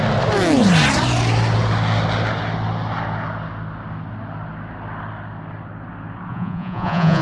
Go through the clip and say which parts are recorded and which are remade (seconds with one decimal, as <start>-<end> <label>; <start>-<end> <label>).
0.0-6.3 recorded; 6.3-7.2 remade